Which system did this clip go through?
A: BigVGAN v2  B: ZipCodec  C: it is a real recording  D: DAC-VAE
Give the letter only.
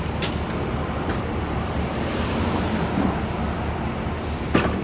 C